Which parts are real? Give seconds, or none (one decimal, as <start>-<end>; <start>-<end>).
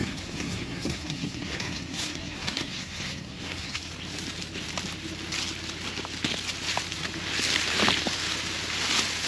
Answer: 3.9-9.3